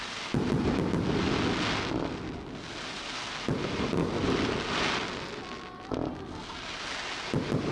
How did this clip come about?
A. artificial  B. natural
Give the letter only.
B